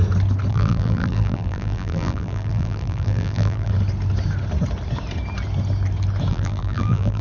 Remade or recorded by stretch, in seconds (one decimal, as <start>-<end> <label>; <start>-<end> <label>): 0.0-0.5 recorded; 0.5-3.7 remade; 3.7-6.3 recorded; 6.3-7.2 remade